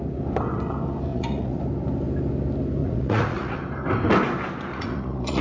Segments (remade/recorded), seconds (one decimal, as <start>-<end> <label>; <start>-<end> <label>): 0.0-1.1 recorded; 1.1-1.6 remade; 1.6-2.8 recorded; 2.8-3.6 remade; 3.6-4.7 recorded; 4.7-5.4 remade